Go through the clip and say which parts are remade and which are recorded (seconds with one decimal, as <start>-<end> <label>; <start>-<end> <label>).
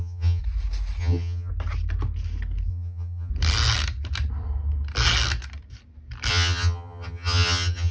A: 0.0-0.4 remade; 0.4-1.0 recorded; 1.0-1.5 remade; 1.5-2.7 recorded; 2.7-3.3 remade; 3.3-6.3 recorded; 6.3-7.9 remade